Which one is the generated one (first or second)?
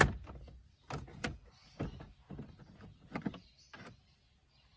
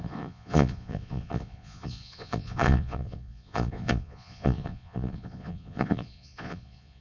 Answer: second